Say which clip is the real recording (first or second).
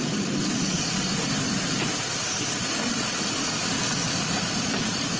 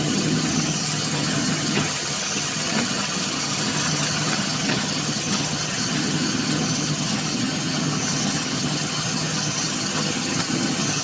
first